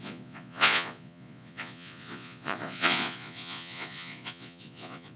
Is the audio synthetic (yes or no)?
yes